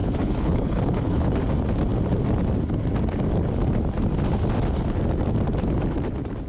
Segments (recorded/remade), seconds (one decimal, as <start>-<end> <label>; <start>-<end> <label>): 0.0-1.4 remade; 1.4-6.5 recorded